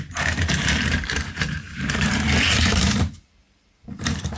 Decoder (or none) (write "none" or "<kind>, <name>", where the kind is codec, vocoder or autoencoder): vocoder, BigVGAN v2